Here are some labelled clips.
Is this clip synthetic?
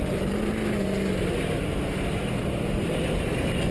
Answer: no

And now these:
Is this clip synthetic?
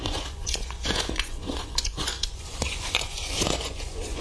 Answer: yes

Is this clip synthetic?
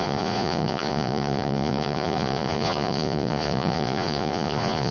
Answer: yes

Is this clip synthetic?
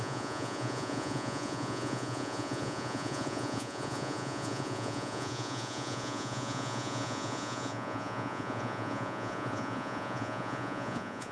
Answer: yes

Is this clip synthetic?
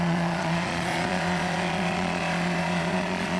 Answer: yes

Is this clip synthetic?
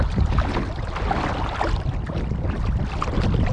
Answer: no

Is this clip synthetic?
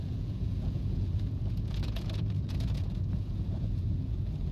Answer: yes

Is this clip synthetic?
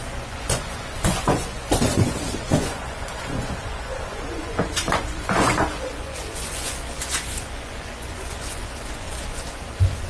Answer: yes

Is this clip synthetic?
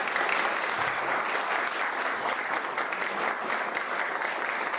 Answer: no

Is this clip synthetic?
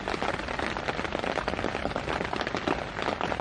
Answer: no